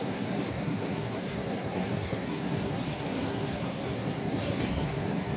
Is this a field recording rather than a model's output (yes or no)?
no